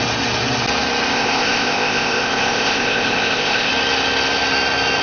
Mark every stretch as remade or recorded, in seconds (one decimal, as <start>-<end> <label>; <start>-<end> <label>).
0.0-1.1 recorded; 1.1-3.7 remade; 3.7-5.0 recorded